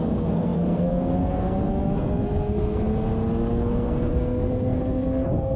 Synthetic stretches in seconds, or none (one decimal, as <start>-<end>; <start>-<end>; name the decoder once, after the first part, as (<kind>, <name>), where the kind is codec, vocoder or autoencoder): 0.0-2.9 (codec, SNAC); 3.5-5.6